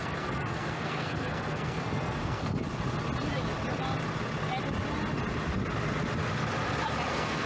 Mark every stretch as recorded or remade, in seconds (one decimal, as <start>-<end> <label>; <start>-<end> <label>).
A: 0.0-2.6 remade; 2.6-7.1 recorded; 7.1-7.5 remade